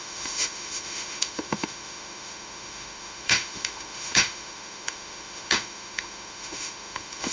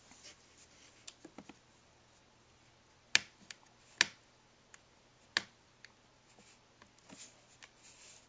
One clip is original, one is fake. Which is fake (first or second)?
first